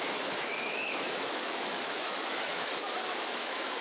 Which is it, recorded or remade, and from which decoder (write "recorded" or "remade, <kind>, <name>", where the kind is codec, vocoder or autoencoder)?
remade, autoencoder, DAC-VAE